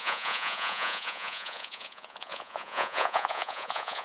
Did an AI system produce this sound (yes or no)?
yes